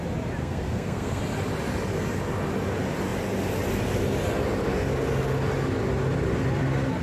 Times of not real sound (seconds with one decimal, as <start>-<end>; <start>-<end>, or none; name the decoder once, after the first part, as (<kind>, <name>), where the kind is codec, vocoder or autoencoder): 0.4-1.2 (codec, SNAC)